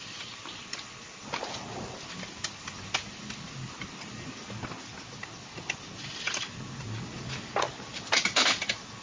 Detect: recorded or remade recorded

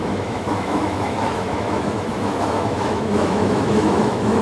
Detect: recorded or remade remade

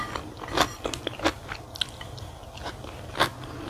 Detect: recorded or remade recorded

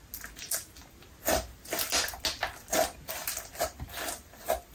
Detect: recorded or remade recorded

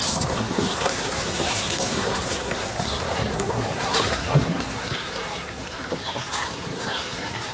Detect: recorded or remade remade